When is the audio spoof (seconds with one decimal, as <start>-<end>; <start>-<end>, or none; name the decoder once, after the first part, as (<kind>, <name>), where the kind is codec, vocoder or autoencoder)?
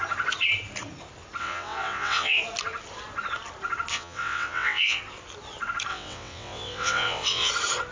1.4-2.4 (vocoder, WaveNeXt); 3.9-5.0; 5.9-7.5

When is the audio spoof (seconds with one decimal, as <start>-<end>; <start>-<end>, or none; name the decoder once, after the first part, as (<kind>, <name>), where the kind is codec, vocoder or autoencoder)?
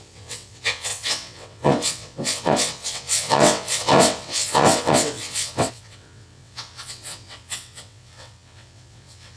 0.0-9.4 (vocoder, WaveNeXt)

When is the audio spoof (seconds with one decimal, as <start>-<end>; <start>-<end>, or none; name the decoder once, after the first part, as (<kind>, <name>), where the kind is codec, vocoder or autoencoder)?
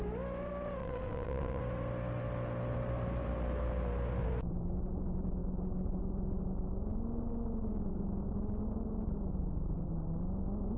0.8-1.6 (vocoder, WaveNeXt)